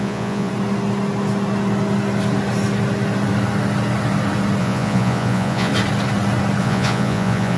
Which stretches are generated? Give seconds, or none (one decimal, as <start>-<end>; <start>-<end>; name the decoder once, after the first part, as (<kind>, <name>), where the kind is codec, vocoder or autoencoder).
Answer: 0.0-0.5 (vocoder, Vocos); 4.6-5.7; 6.6-7.6